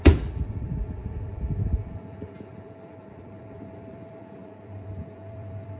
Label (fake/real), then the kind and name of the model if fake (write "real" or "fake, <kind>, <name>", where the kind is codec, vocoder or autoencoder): fake, vocoder, BigVGAN v2